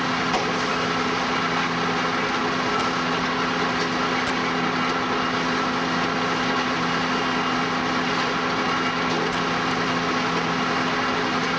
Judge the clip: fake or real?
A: real